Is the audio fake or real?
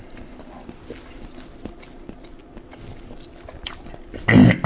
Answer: real